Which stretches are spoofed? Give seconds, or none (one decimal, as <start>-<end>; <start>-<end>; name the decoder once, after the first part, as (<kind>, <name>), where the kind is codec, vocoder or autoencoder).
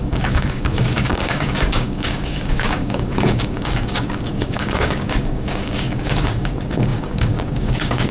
0.0-8.1 (codec, DAC)